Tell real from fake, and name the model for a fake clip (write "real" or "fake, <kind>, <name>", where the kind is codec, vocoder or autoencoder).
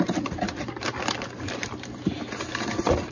real